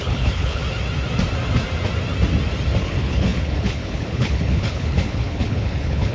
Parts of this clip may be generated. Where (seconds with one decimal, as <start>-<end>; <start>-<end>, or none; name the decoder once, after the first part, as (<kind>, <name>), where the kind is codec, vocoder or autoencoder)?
0.0-0.6 (codec, HILCodec); 2.8-6.1